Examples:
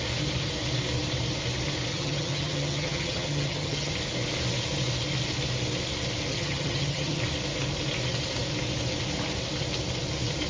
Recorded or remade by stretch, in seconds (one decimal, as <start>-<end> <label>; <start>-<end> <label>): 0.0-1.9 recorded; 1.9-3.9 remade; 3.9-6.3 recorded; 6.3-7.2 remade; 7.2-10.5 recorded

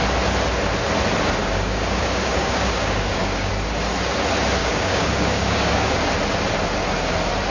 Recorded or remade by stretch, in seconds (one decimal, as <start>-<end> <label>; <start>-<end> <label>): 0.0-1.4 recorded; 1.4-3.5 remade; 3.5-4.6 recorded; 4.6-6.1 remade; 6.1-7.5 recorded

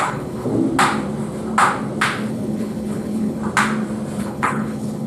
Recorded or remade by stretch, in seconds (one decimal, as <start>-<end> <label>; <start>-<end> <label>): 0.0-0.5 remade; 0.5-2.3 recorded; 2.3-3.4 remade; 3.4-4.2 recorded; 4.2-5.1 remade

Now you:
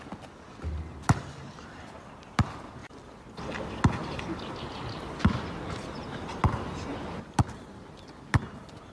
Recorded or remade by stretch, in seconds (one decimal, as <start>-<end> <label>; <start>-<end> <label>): 0.0-8.9 recorded

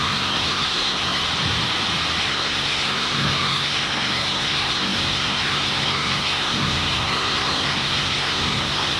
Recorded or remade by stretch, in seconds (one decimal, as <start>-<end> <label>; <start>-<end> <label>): 0.0-1.2 remade; 1.2-2.2 recorded; 2.2-9.0 remade

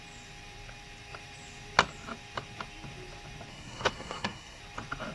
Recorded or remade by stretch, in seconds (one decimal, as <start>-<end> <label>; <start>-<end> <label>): 0.0-3.5 recorded; 3.5-4.6 remade; 4.6-5.1 recorded

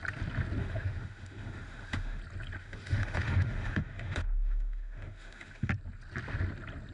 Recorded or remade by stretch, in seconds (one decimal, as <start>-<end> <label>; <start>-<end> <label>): 0.0-0.6 recorded; 0.6-2.2 remade; 2.2-2.6 recorded; 2.6-5.7 remade; 5.7-6.9 recorded